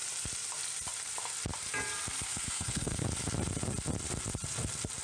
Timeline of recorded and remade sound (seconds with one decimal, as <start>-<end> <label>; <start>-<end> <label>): 0.0-2.3 recorded; 2.3-3.0 remade; 3.0-5.0 recorded